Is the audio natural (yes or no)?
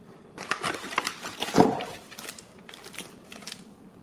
yes